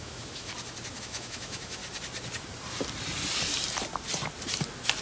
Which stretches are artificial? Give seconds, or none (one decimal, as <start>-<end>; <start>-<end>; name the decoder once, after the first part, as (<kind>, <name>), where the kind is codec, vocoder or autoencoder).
0.0-0.5 (autoencoder, DAC-VAE); 1.0-1.8